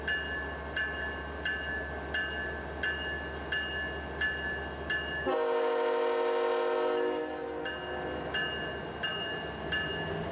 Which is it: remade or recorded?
recorded